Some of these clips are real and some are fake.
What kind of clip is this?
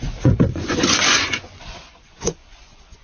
fake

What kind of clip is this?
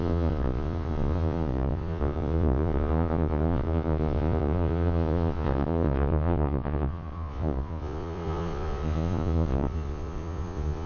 fake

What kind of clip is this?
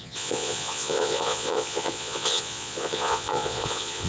fake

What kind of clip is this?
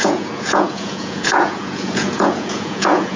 fake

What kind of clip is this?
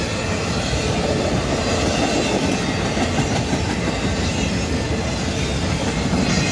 real